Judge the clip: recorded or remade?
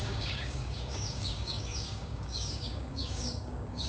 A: remade